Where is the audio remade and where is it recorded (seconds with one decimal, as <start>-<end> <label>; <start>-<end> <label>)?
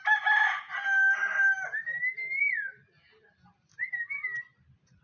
0.0-5.0 recorded